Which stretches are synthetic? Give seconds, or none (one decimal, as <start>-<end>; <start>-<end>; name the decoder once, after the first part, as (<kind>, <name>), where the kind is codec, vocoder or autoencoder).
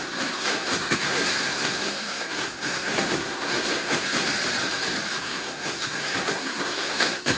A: 0.0-4.3 (codec, SNAC); 5.2-7.4